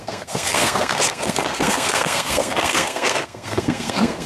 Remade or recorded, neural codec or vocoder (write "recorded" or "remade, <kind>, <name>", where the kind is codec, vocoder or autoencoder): remade, codec, SNAC